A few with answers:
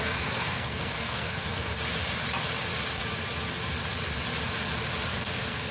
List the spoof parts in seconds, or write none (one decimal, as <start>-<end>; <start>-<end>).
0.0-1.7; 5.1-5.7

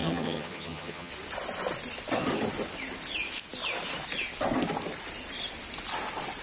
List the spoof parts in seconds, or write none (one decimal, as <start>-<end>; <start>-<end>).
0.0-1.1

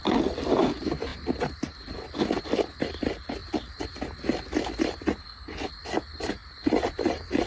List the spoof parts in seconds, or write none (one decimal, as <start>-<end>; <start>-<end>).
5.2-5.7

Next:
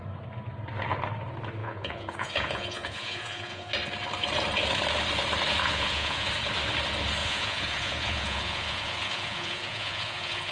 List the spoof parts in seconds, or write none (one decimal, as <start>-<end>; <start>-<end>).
1.6-3.7; 5.6-6.3; 7.2-10.5